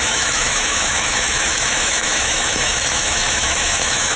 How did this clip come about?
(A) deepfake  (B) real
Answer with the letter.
A